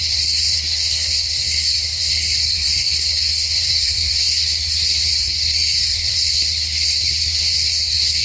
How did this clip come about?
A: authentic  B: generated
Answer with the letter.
B